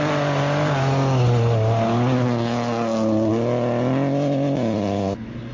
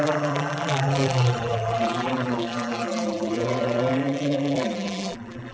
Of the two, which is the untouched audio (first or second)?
first